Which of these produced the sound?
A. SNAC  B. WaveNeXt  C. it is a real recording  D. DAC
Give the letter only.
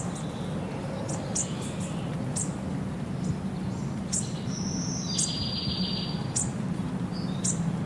C